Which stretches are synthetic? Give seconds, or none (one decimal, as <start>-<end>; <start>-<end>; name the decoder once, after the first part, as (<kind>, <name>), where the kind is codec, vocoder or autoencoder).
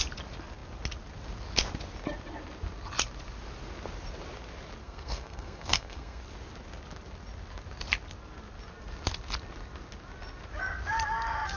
4.8-6.2 (codec, SNAC)